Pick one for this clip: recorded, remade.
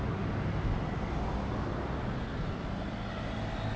recorded